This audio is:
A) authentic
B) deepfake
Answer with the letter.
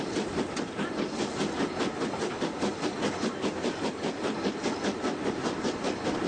A